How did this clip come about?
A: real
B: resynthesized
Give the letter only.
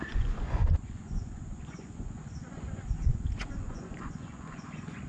B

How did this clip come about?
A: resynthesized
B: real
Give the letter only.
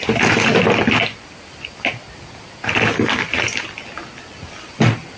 B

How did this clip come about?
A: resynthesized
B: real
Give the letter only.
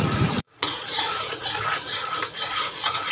A